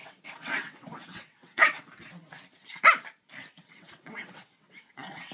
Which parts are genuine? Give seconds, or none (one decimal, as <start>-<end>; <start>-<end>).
1.8-3.6